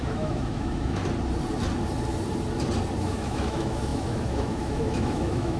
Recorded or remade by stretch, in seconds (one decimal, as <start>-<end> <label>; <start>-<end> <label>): 0.0-1.0 remade; 1.0-3.0 recorded; 3.0-5.6 remade